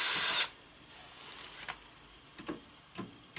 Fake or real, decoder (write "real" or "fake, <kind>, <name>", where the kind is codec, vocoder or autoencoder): real